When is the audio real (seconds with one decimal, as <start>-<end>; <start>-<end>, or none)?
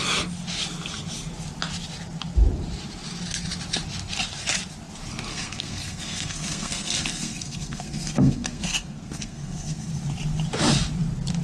0.0-5.3; 9.9-11.4